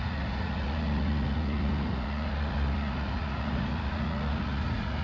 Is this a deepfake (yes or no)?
yes